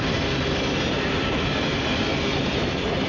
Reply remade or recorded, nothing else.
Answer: recorded